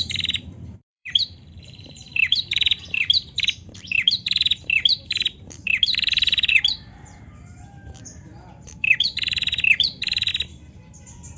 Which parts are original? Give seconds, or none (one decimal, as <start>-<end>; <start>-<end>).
10.3-11.0